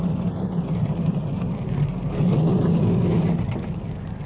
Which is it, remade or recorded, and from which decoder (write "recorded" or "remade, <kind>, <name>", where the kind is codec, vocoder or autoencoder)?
remade, vocoder, BigVGAN v2